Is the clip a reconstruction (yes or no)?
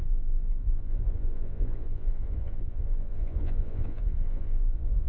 yes